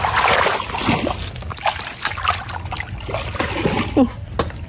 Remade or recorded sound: recorded